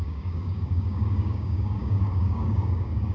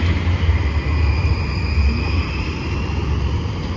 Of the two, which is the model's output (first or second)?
first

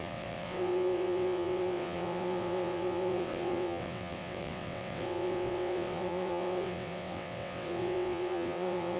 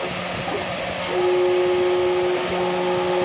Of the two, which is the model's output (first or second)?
first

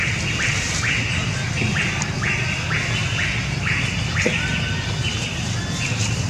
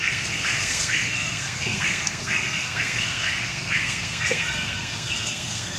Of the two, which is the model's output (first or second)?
second